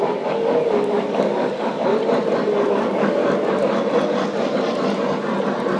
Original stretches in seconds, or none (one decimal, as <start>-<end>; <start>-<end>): 1.9-2.7; 3.2-5.8